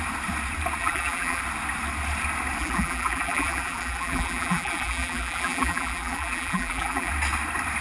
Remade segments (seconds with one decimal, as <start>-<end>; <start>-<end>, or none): 0.8-1.4; 2.6-7.1